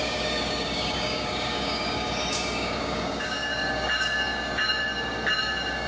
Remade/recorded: remade